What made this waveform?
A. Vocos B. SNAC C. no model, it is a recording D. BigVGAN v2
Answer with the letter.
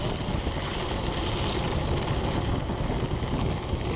C